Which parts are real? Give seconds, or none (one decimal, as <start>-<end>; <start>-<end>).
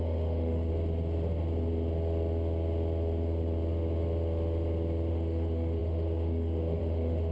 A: 0.7-5.1